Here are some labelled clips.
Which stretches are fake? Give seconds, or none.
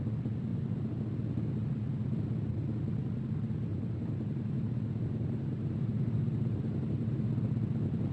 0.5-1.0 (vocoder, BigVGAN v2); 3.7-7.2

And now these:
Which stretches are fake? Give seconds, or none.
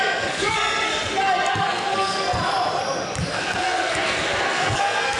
0.0-0.9 (codec, SNAC); 1.5-2.4; 3.3-5.2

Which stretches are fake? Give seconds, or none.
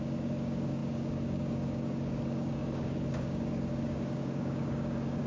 0.0-5.3 (codec, DAC)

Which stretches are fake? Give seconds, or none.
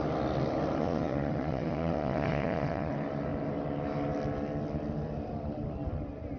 0.8-2.9 (vocoder, Vocos)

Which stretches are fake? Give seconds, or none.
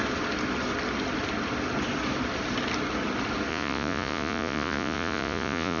3.5-5.8 (vocoder, Vocos)